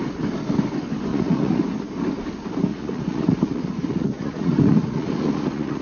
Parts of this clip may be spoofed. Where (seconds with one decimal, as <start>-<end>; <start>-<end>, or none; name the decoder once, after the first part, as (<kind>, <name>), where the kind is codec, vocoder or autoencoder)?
1.1-1.6 (vocoder, Vocos); 2.7-5.8